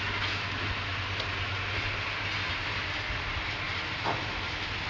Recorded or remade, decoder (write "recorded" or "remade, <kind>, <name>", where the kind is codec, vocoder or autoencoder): recorded